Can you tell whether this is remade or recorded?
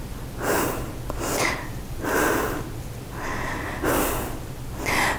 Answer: recorded